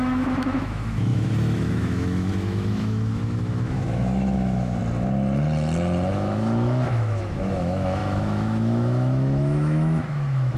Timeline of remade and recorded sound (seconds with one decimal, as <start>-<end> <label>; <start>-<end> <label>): 0.0-4.8 remade; 4.8-6.1 recorded; 6.1-10.6 remade